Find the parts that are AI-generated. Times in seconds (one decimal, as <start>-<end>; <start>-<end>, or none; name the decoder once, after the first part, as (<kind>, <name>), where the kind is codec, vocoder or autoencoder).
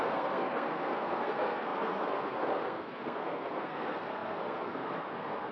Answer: 0.0-5.5 (codec, SNAC)